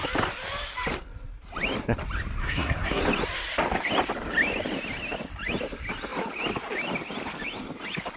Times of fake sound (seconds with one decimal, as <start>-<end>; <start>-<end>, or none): 2.4-3.0